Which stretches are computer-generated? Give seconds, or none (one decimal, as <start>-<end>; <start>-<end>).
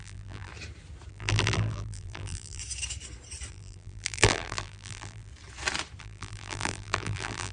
0.0-0.5; 1.1-2.6; 3.5-5.3; 6.0-7.5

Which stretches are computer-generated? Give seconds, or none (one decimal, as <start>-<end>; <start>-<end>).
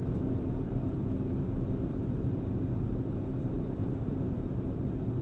0.0-2.4; 3.8-4.5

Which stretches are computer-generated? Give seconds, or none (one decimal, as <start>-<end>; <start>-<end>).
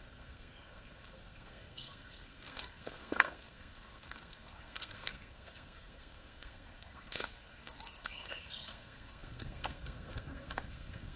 0.0-11.2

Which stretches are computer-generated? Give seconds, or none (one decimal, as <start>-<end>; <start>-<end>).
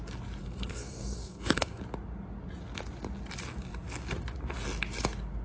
0.4-1.8